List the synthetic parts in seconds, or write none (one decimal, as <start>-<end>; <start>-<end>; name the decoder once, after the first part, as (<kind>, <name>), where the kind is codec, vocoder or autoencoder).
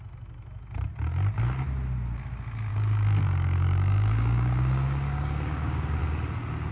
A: 2.7-6.0 (codec, DAC)